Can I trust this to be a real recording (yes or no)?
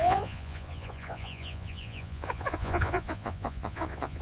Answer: no